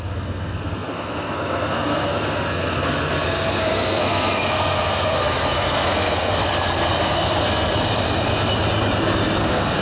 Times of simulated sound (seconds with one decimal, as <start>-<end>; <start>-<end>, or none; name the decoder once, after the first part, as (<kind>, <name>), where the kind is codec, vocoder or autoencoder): 0.0-6.4 (codec, SNAC); 7.0-7.7; 9.4-9.8